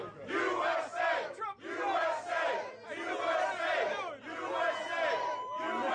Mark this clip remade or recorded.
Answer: recorded